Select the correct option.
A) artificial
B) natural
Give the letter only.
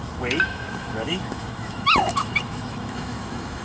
A